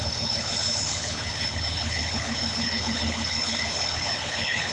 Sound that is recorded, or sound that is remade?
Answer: remade